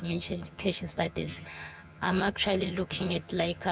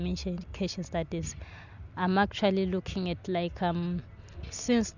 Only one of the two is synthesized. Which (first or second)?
first